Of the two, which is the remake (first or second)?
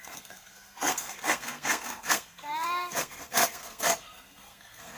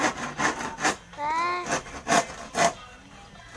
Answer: first